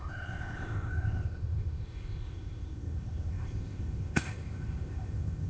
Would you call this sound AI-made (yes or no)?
yes